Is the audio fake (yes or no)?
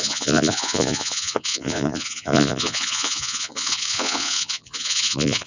yes